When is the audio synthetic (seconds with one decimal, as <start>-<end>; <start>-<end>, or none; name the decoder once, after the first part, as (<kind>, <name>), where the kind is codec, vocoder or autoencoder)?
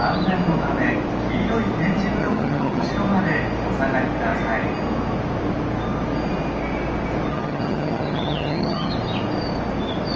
2.2-2.9 (vocoder, HiFi-GAN); 7.3-8.9